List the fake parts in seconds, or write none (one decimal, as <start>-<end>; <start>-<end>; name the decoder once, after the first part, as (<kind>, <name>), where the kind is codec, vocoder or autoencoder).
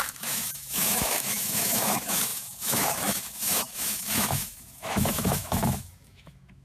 0.0-6.6 (autoencoder, DAC-VAE)